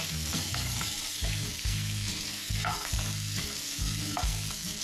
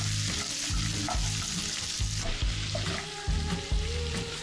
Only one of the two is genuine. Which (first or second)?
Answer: second